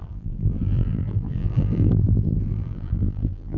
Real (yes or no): no